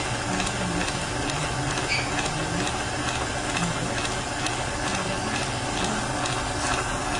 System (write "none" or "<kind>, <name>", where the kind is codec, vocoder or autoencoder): none